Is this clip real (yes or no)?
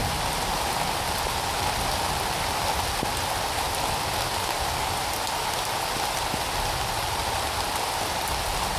yes